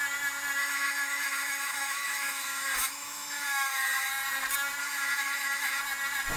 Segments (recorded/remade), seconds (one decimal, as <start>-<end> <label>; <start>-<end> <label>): 0.0-0.6 recorded; 0.6-4.1 remade; 4.1-4.8 recorded; 4.8-5.8 remade; 5.8-6.4 recorded